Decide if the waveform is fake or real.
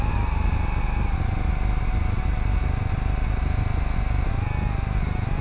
real